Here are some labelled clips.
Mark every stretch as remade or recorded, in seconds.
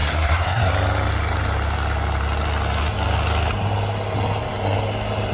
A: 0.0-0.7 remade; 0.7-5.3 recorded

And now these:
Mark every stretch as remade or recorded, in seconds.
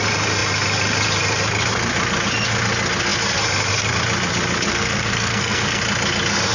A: 0.0-4.7 recorded; 4.7-5.8 remade; 5.8-6.5 recorded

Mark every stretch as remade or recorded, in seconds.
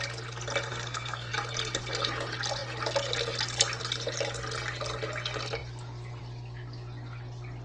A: 0.0-0.7 recorded; 0.7-1.3 remade; 1.3-7.6 recorded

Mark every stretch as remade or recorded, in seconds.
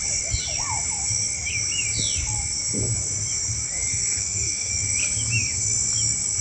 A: 0.0-3.9 recorded; 3.9-4.7 remade; 4.7-6.4 recorded